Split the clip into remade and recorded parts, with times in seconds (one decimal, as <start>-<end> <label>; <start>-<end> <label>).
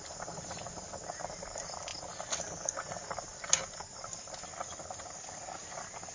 0.0-6.1 recorded